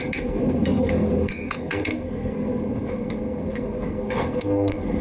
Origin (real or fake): fake